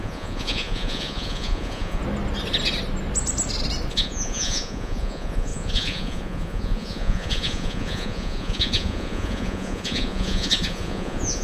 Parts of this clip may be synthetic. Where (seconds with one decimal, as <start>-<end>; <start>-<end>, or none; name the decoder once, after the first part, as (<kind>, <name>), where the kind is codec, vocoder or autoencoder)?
0.0-2.0 (vocoder, Vocos); 3.9-11.4